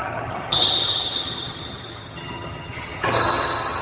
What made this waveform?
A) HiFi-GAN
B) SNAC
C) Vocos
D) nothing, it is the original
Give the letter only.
A